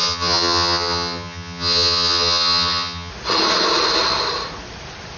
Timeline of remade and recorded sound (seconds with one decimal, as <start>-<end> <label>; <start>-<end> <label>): 0.0-3.1 remade; 3.1-5.2 recorded